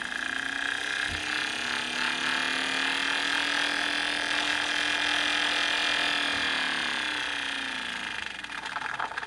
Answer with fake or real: real